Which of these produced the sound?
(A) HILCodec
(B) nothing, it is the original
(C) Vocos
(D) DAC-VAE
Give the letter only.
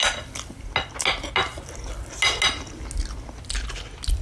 B